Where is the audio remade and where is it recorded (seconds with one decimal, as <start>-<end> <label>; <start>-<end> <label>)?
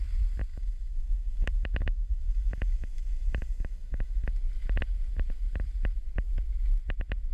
0.0-0.5 recorded; 0.5-4.3 remade; 4.3-7.3 recorded